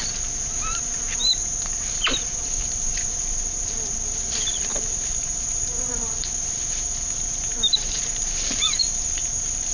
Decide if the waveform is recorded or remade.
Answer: remade